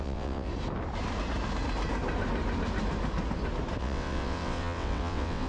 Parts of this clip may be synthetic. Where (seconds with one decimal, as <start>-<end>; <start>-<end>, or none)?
0.0-0.5; 3.8-5.5